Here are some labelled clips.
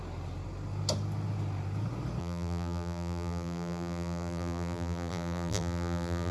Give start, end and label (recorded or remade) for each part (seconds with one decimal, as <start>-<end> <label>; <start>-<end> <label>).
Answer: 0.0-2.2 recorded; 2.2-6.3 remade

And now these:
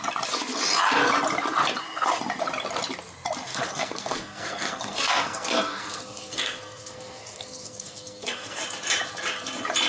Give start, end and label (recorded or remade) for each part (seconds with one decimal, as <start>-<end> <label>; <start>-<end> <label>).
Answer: 0.0-3.5 recorded; 3.5-8.6 remade; 8.6-9.9 recorded

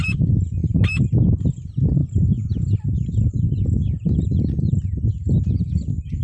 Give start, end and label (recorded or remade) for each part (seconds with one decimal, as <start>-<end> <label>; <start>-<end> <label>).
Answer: 0.0-6.2 recorded

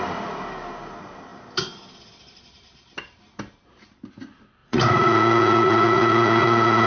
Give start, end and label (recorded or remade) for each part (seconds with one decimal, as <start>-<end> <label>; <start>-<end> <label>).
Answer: 0.0-4.6 recorded; 4.6-6.9 remade